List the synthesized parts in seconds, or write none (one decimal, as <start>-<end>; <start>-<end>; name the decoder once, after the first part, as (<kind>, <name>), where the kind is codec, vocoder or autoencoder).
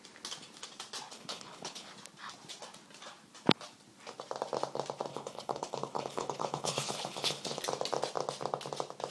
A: 1.1-1.9 (codec, HILCodec); 5.1-7.6